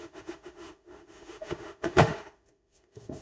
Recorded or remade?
remade